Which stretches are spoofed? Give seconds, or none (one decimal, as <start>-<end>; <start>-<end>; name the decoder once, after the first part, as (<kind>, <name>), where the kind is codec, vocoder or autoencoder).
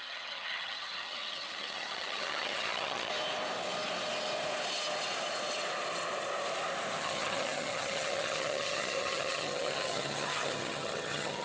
0.0-3.1 (vocoder, HiFi-GAN); 7.0-11.4